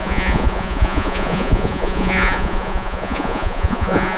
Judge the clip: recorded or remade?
remade